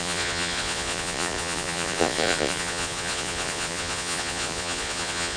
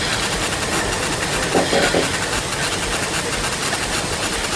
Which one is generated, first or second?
first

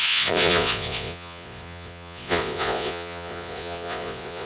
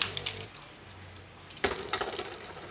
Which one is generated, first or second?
first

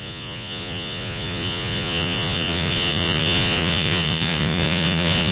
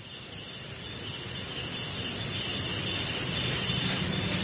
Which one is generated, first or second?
first